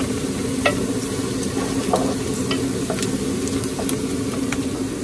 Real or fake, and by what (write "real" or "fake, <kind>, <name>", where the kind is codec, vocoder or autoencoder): real